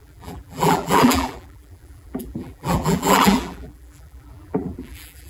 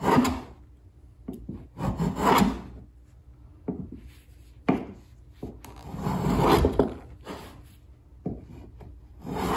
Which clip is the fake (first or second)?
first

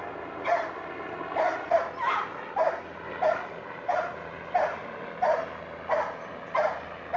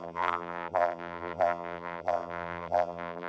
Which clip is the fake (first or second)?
second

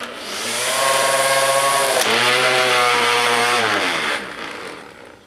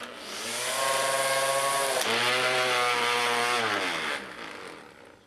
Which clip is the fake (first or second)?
first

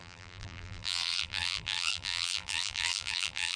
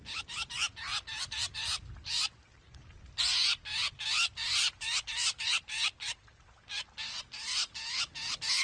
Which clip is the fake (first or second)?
first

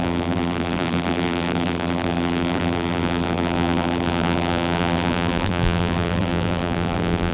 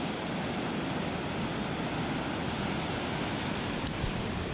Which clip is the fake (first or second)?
first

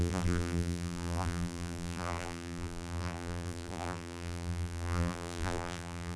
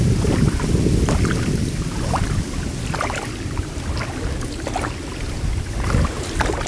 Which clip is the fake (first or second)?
first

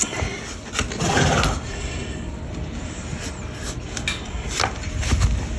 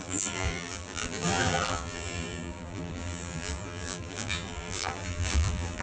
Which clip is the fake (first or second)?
second